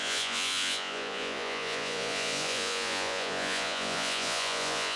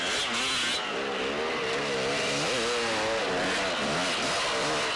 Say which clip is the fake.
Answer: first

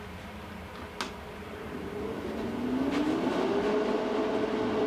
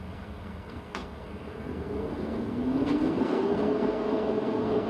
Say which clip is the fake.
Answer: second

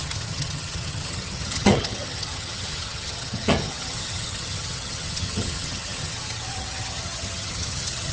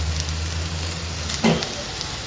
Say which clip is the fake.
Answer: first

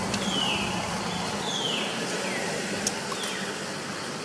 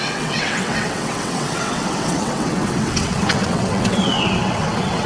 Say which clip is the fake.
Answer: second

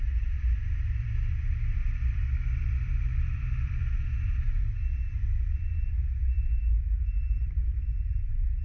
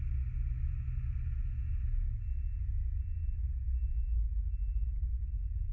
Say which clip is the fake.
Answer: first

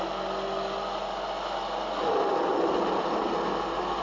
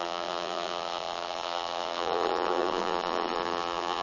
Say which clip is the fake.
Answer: second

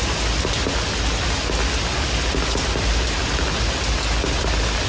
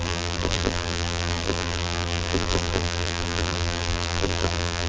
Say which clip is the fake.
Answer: second